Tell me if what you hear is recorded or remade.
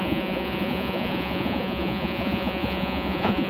remade